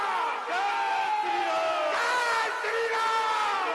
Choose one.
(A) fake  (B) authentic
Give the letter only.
B